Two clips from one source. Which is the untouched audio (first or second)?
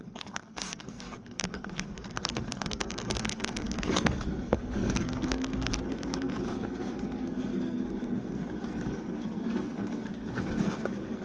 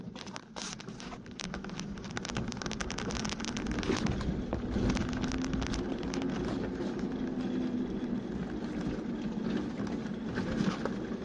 second